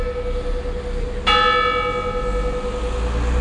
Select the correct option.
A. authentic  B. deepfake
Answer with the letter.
A